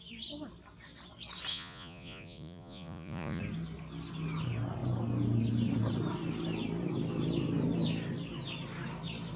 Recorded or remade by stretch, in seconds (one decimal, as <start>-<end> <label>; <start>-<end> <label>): 0.0-1.5 recorded; 1.5-3.4 remade; 3.4-9.4 recorded